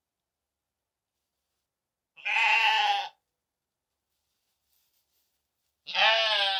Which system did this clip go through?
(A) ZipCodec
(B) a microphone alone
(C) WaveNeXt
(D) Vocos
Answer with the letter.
B